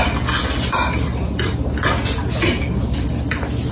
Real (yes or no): yes